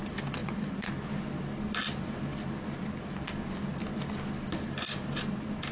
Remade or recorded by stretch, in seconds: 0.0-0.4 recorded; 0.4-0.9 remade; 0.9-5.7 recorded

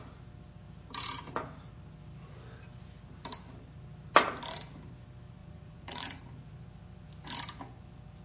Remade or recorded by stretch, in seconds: 0.0-5.4 recorded; 5.4-6.2 remade; 6.2-8.2 recorded